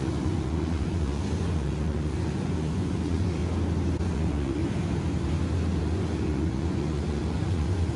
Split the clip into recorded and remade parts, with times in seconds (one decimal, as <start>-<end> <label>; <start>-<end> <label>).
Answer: 0.0-3.4 remade; 3.4-4.0 recorded; 4.0-4.6 remade; 4.6-5.8 recorded; 5.8-8.0 remade